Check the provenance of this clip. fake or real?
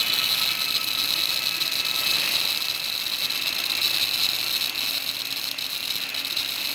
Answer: real